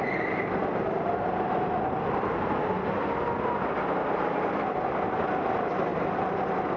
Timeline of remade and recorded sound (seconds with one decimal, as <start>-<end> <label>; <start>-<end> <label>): 0.0-5.9 recorded; 5.9-6.8 remade